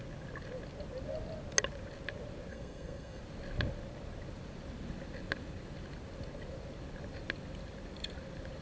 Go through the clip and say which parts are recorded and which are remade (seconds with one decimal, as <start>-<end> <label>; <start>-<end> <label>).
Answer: 0.0-2.5 recorded; 2.5-3.2 remade; 3.2-8.6 recorded

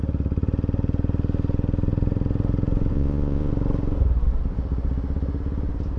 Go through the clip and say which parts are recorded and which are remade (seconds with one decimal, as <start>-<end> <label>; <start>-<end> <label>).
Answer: 0.0-2.9 recorded; 2.9-3.5 remade; 3.5-6.0 recorded

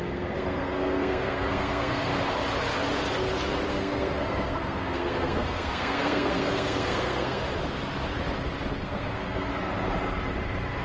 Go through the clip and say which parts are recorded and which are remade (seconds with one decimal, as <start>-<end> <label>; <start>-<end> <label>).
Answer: 0.0-2.1 remade; 2.1-3.7 recorded; 3.7-7.4 remade; 7.4-8.7 recorded; 8.7-9.5 remade; 9.5-10.8 recorded

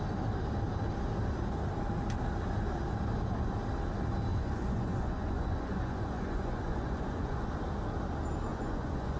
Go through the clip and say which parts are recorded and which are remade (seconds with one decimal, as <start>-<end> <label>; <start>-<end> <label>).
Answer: 0.0-4.3 recorded; 4.3-7.5 remade; 7.5-8.5 recorded; 8.5-9.2 remade

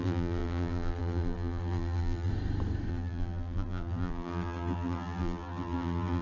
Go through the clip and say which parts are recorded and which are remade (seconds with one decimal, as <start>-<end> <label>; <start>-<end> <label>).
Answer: 0.0-2.3 remade; 2.3-2.9 recorded; 2.9-6.2 remade